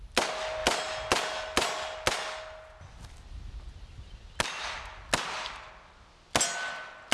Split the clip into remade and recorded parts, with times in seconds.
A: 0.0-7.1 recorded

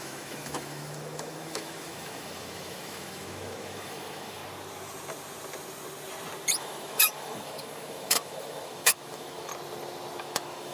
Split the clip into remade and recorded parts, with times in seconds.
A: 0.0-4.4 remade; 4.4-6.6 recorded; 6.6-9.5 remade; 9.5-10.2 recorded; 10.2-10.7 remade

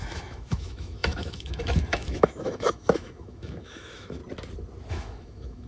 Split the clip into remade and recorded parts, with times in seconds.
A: 0.0-4.2 remade; 4.2-4.9 recorded; 4.9-5.7 remade